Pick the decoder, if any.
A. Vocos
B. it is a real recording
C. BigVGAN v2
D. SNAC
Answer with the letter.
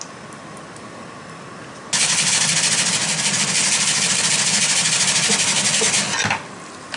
B